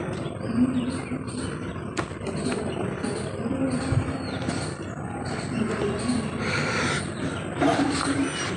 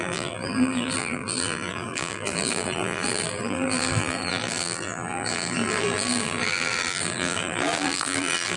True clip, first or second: first